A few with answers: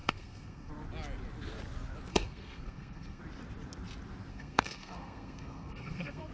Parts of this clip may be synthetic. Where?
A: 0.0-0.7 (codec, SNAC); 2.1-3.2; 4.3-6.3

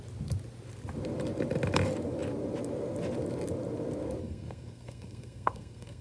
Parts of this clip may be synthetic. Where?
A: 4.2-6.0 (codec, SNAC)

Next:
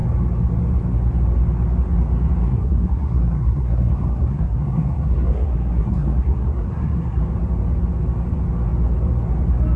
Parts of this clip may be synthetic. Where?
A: 2.4-7.2 (codec, SNAC)

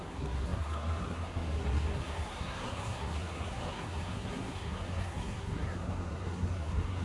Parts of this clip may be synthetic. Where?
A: 0.0-7.0 (codec, SNAC)

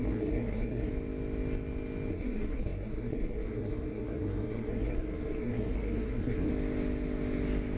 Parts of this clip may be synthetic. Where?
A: 0.0-0.9 (codec, SNAC); 2.1-6.5

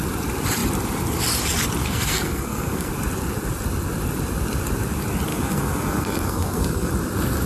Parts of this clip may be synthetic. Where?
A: 1.8-2.9 (codec, SNAC); 5.3-6.9